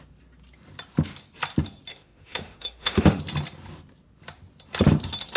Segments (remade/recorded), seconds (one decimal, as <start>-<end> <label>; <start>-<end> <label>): 0.0-1.9 recorded; 1.9-3.2 remade; 3.2-5.4 recorded